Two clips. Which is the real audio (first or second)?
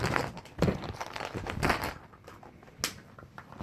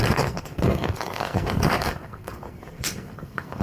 first